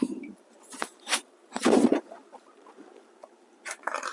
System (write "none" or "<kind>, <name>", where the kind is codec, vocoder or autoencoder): vocoder, BigVGAN v2